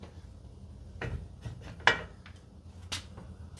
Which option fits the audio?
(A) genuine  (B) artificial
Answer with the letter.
A